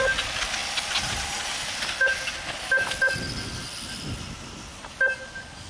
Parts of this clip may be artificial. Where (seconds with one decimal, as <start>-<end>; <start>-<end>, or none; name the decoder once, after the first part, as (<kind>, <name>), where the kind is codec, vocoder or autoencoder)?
none